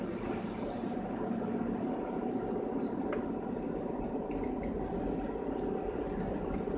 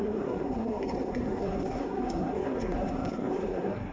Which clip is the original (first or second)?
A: first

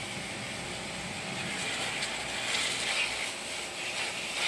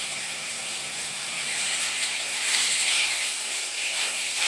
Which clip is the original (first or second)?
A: first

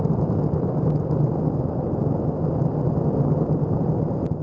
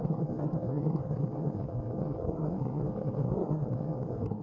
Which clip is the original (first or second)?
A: first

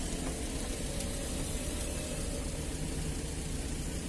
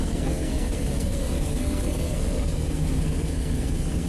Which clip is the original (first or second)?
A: first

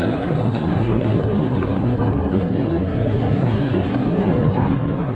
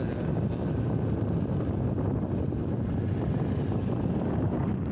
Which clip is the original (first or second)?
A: second